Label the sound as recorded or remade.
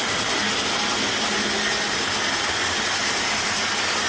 recorded